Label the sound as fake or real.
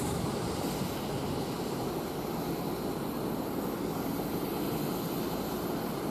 real